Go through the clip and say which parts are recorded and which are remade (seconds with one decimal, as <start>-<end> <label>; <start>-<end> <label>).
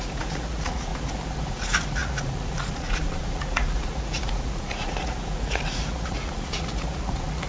0.0-0.9 remade; 0.9-1.5 recorded; 1.5-7.5 remade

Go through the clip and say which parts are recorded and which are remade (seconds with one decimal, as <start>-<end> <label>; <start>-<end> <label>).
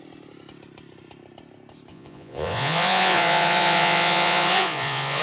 0.0-1.9 recorded; 1.9-5.2 remade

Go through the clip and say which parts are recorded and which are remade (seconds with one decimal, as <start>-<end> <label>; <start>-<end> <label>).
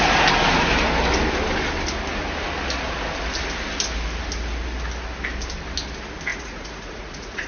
0.0-6.3 recorded; 6.3-7.5 remade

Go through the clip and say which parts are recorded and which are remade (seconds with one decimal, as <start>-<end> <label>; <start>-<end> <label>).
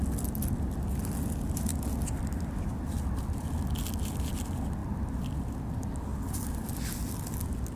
0.0-7.8 recorded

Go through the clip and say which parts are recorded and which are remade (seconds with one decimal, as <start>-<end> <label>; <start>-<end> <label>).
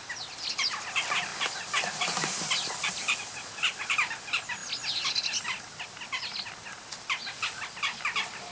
0.0-8.5 recorded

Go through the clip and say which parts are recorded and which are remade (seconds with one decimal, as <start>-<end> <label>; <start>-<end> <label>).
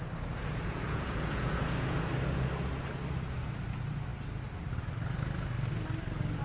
0.0-0.4 recorded; 0.4-2.1 remade; 2.1-6.4 recorded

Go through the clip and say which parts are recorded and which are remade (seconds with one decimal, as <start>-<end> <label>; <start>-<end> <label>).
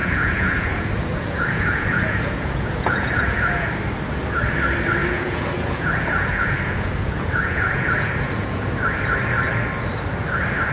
0.0-3.7 remade; 3.7-5.0 recorded; 5.0-8.7 remade; 8.7-10.7 recorded